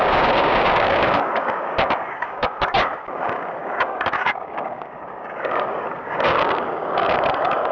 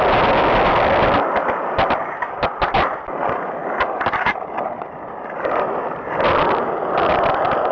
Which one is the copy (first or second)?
first